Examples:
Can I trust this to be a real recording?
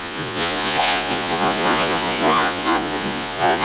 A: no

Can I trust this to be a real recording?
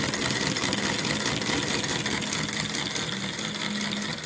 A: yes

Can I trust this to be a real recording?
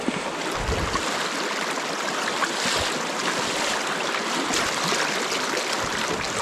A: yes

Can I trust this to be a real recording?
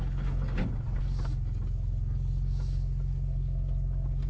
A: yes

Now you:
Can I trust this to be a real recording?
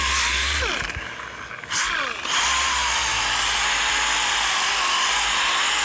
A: yes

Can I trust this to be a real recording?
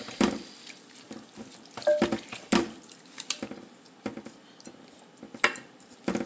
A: yes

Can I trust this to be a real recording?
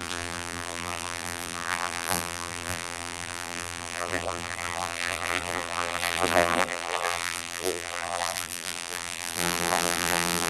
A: no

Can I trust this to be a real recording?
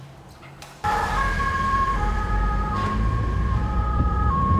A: no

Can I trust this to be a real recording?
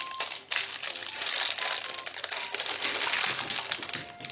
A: yes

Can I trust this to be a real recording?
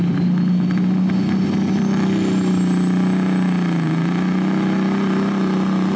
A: yes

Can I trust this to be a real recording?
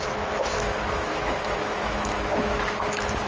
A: no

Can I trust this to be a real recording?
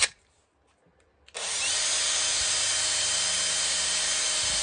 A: yes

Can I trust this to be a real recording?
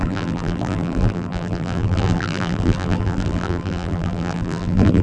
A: no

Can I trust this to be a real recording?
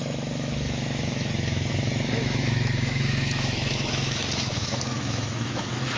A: no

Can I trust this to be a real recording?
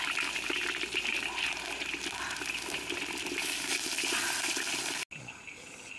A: yes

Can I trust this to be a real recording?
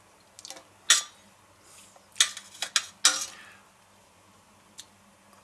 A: yes